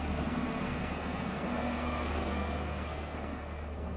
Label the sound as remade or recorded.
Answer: remade